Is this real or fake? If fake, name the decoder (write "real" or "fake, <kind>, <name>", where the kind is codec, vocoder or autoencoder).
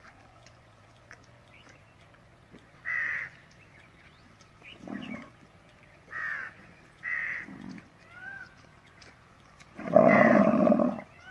fake, vocoder, Vocos